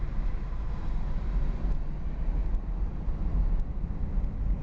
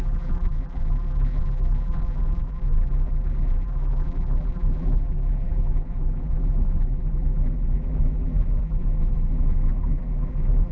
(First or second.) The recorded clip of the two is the first